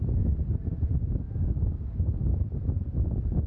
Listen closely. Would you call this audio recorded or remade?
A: recorded